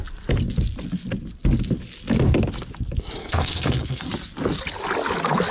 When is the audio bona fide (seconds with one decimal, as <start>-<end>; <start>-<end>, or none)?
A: 0.0-3.2; 4.1-5.5